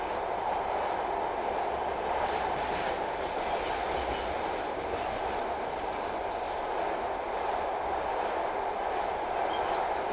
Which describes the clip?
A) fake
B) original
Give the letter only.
B